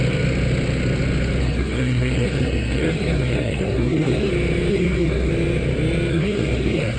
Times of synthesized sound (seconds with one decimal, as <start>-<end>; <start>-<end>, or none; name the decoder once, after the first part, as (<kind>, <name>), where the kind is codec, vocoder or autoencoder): 1.4-4.3 (codec, SNAC); 4.7-5.3; 6.1-7.0